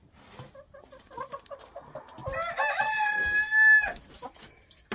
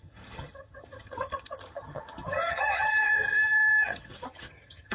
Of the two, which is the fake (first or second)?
second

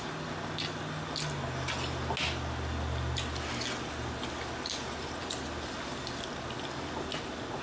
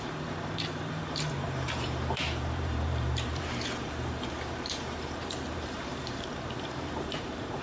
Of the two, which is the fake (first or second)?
second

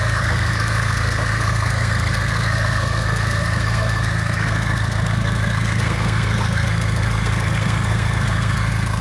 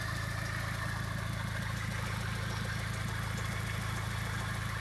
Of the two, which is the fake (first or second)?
first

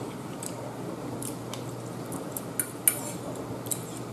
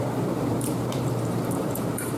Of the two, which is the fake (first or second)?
second